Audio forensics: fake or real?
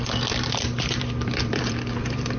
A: fake